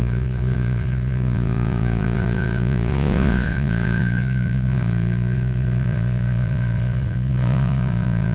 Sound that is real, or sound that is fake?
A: fake